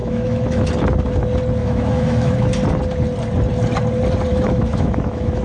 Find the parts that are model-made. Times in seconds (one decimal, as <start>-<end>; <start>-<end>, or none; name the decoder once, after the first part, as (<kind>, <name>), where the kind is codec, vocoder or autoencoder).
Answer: 0.0-0.7 (autoencoder, DAC-VAE); 1.6-2.3; 4.3-5.4